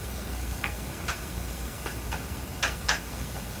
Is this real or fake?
fake